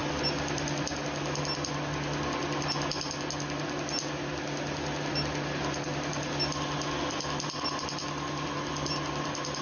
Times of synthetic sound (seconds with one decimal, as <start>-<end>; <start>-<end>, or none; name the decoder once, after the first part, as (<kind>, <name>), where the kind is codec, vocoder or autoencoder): none